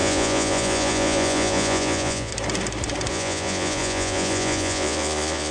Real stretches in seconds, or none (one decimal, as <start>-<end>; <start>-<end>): 2.3-3.1

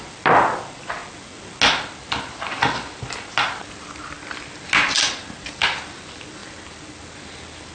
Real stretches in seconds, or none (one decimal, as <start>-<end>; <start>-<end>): 0.0-7.7

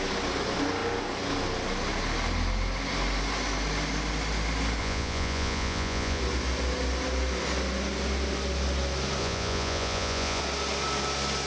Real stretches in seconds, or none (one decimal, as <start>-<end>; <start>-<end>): 0.0-4.8; 6.2-9.2; 10.4-11.5

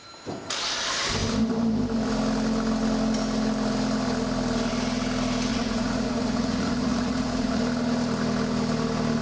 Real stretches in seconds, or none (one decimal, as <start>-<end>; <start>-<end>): 0.0-5.5; 7.6-9.2

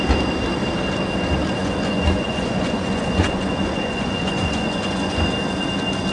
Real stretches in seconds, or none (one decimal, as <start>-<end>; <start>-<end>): 0.0-1.6; 5.3-6.1

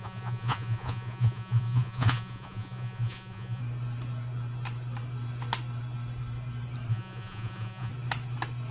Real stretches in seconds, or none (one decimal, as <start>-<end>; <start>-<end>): 3.6-6.9; 7.9-8.7

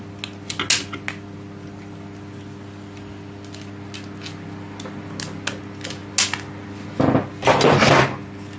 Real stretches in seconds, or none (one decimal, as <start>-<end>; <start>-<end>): 0.0-8.6

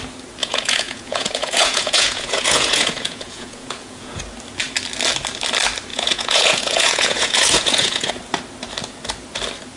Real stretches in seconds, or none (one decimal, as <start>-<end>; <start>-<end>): 0.0-0.4; 4.2-5.9; 8.1-9.8